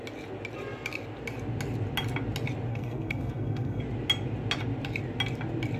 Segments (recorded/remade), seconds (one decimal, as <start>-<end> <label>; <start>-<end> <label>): 0.0-2.7 recorded; 2.7-3.8 remade; 3.8-5.8 recorded